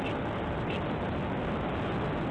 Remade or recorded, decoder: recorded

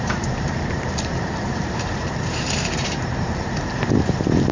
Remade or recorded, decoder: remade, vocoder, BigVGAN v2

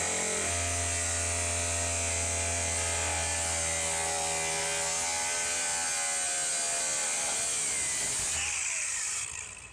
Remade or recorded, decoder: recorded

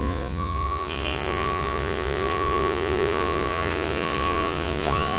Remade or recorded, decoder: remade, vocoder, Vocos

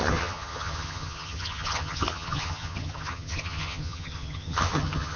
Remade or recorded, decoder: remade, vocoder, HiFi-GAN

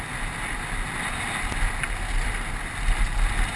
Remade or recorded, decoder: recorded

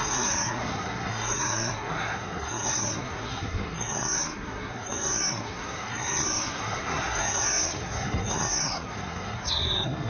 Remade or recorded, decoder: remade, codec, SNAC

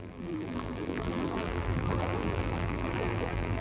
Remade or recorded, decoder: remade, vocoder, BigVGAN v2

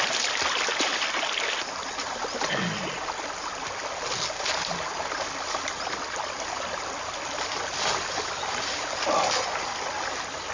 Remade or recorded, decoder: recorded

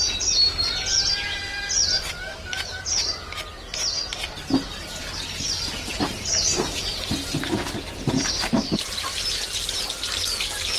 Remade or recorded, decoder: recorded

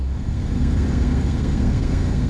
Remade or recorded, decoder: remade, codec, SNAC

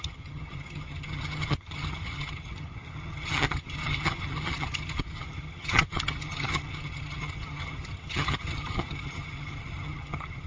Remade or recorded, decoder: remade, vocoder, HiFi-GAN